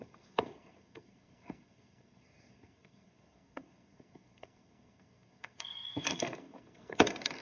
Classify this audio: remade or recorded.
remade